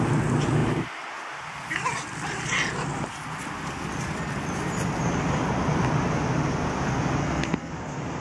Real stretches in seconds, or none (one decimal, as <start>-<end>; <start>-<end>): 0.0-7.2; 7.7-8.2